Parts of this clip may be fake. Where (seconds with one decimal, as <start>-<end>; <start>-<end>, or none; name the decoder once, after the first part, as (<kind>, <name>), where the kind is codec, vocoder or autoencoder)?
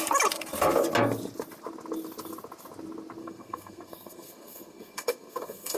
3.2-5.8 (codec, SNAC)